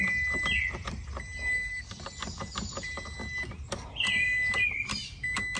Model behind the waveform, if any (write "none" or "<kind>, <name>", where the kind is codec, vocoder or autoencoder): none